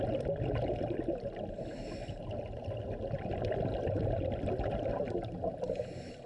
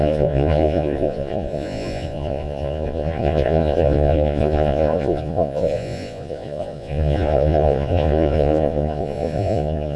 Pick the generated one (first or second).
second